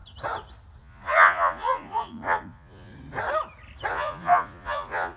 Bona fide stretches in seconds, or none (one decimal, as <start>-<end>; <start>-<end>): 0.0-0.8; 2.9-3.9